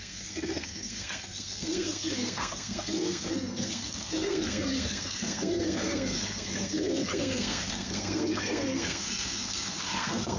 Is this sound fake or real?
fake